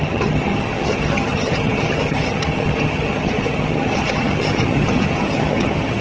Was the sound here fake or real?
fake